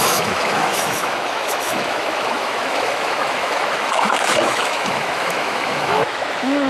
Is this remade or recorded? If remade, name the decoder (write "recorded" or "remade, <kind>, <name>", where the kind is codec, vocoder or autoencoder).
remade, autoencoder, DAC-VAE